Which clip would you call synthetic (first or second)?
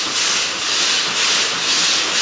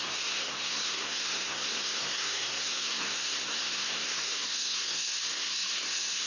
second